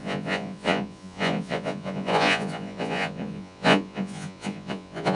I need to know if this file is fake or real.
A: fake